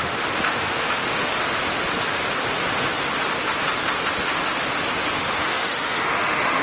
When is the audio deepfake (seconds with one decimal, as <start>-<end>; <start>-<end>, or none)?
0.0-1.3; 5.2-6.6